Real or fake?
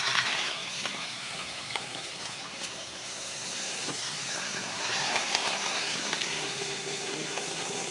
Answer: fake